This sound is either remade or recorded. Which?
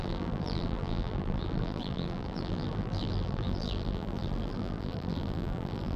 remade